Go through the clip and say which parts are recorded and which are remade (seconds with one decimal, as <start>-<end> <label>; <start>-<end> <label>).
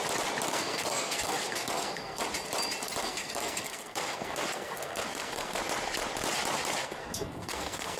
0.0-0.5 recorded; 0.5-2.2 remade; 2.2-3.0 recorded; 3.0-5.6 remade; 5.6-6.8 recorded; 6.8-8.0 remade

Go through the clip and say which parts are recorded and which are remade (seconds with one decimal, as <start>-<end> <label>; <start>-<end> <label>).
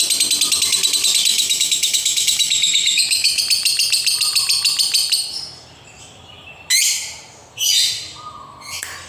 0.0-1.3 recorded; 1.3-3.4 remade; 3.4-9.1 recorded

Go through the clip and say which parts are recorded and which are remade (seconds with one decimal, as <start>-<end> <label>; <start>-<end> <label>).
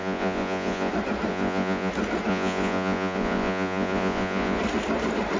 0.0-0.9 remade; 0.9-1.3 recorded; 1.3-1.9 remade; 1.9-2.3 recorded; 2.3-4.6 remade; 4.6-5.4 recorded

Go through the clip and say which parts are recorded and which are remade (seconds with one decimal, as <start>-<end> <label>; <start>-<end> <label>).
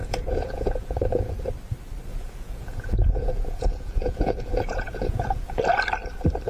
0.0-1.5 remade; 1.5-2.1 recorded; 2.1-5.6 remade; 5.6-6.5 recorded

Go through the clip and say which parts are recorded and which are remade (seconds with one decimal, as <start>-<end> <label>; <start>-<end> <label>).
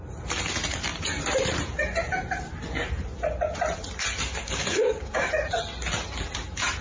0.0-4.4 recorded; 4.4-5.3 remade; 5.3-6.8 recorded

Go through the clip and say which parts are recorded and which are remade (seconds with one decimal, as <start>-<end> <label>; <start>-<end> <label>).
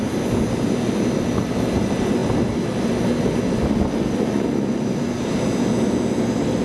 0.0-6.6 recorded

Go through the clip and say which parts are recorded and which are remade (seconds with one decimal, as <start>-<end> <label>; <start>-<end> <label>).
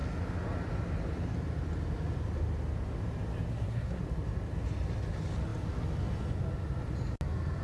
0.0-3.5 recorded; 3.5-4.0 remade; 4.0-7.6 recorded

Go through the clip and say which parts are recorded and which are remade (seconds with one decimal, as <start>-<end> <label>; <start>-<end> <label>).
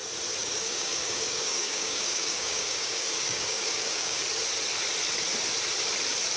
0.0-0.4 recorded; 0.4-4.2 remade; 4.2-6.4 recorded